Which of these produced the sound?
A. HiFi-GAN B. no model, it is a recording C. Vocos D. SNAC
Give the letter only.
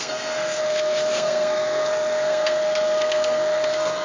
D